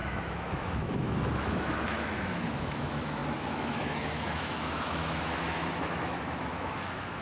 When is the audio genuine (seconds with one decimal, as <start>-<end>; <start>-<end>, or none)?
none